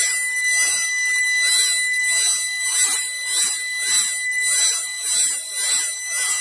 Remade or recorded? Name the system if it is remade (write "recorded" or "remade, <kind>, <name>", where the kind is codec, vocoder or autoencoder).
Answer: recorded